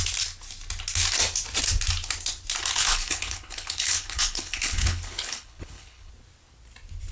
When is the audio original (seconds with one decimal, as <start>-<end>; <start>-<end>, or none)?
0.0-2.8; 6.1-7.1